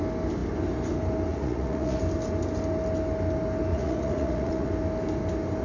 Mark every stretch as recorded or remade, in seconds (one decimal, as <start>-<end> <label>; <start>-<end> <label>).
0.0-1.3 recorded; 1.3-2.0 remade; 2.0-3.7 recorded; 3.7-4.7 remade; 4.7-5.6 recorded